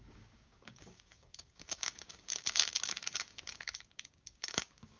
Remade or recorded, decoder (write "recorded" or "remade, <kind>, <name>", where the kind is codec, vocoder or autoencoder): remade, codec, DAC